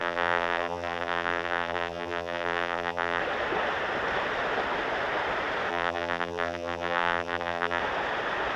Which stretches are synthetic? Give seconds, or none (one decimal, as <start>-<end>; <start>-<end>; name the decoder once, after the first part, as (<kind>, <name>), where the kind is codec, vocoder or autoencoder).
0.0-3.2 (vocoder, BigVGAN v2); 5.7-7.8